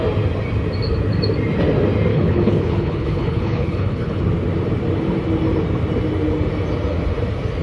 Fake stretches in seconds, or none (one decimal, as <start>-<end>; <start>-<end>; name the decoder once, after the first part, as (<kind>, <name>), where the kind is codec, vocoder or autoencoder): 2.1-4.2 (codec, HILCodec)